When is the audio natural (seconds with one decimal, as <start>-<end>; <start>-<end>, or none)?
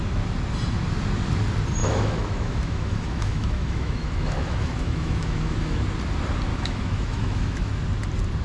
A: 0.0-1.8; 5.8-6.5; 7.7-8.4